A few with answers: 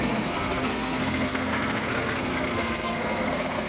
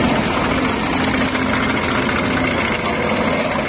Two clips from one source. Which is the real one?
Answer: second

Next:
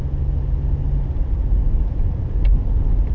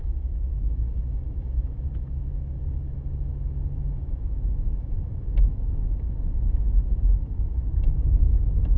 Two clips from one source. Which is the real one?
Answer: first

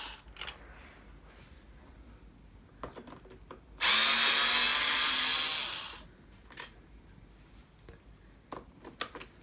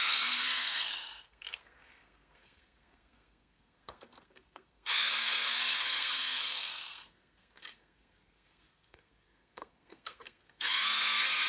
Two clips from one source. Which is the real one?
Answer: first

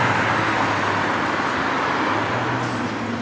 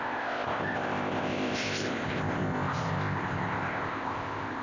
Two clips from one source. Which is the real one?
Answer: first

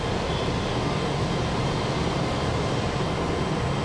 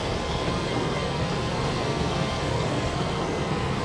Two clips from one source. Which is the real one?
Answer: first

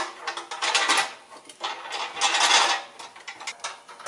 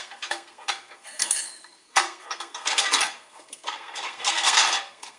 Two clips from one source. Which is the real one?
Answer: first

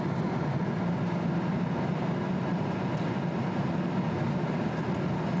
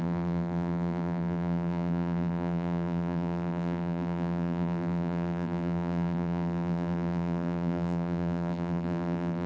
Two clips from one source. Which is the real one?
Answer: first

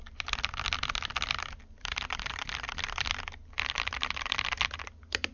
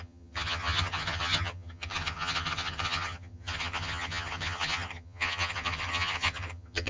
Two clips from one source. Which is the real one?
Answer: first